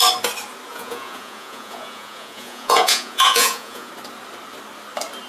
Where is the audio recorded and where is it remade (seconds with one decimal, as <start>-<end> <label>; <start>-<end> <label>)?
0.0-0.7 recorded; 0.7-3.9 remade; 3.9-5.3 recorded